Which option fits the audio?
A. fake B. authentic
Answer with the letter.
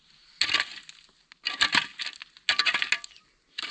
B